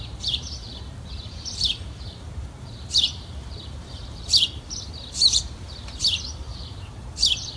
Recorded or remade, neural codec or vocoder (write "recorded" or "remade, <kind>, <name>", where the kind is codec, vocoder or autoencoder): remade, vocoder, BigVGAN v2